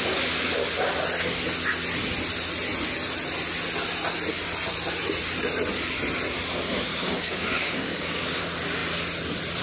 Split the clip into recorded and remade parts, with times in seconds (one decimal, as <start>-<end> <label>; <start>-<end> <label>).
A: 0.0-6.9 recorded; 6.9-8.4 remade; 8.4-9.6 recorded